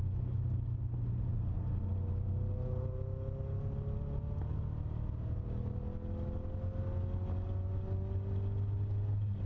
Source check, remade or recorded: recorded